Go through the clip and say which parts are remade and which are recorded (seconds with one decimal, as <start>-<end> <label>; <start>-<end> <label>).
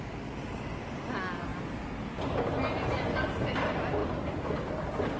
0.0-5.2 recorded